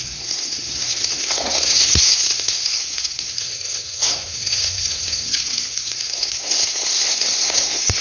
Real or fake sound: fake